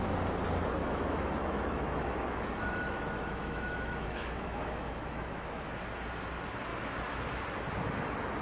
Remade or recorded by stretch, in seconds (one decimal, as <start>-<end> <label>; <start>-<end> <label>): 0.0-0.8 recorded; 0.8-5.8 remade; 5.8-6.7 recorded; 6.7-7.4 remade; 7.4-8.4 recorded